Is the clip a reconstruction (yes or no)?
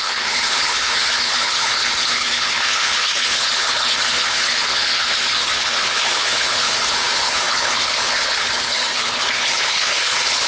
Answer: yes